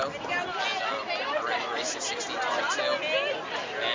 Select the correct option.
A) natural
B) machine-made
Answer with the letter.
A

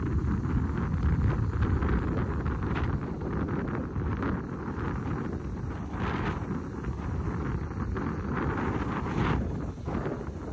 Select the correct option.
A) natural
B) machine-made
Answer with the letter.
A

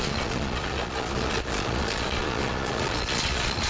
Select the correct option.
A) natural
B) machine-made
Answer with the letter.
B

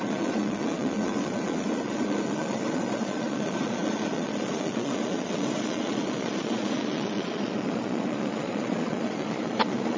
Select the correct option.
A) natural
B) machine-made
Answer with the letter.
B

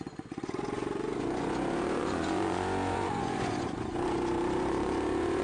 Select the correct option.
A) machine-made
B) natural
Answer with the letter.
A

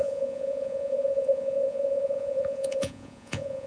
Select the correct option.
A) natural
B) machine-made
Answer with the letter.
B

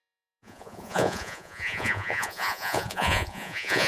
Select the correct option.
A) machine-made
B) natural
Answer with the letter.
A